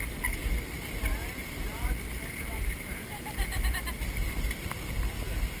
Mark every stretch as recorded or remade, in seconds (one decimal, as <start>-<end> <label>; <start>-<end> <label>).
0.0-5.6 recorded

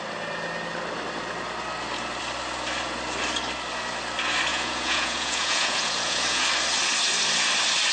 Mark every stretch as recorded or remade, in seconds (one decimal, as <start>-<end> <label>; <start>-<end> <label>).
0.0-4.5 recorded; 4.5-6.4 remade; 6.4-7.9 recorded

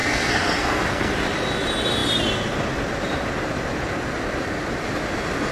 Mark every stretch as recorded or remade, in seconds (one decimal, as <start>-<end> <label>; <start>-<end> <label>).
0.0-1.1 remade; 1.1-5.5 recorded

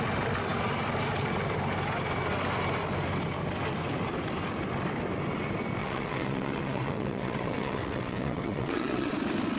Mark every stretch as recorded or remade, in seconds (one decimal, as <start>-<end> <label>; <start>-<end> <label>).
0.0-5.8 recorded; 5.8-9.1 remade; 9.1-9.6 recorded

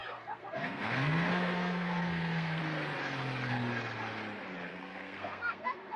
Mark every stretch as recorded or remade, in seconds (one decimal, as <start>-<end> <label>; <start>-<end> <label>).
0.0-2.6 remade; 2.6-4.7 recorded; 4.7-6.0 remade

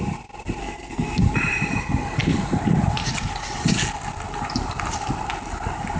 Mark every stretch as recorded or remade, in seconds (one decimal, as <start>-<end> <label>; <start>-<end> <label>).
0.0-0.6 recorded; 0.6-1.2 remade; 1.2-6.0 recorded